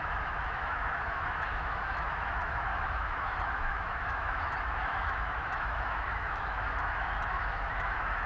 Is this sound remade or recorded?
remade